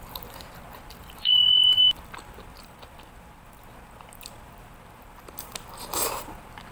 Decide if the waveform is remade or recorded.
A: recorded